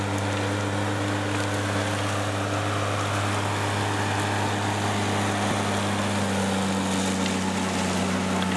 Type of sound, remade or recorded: recorded